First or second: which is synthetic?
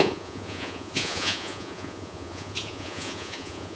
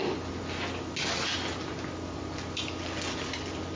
first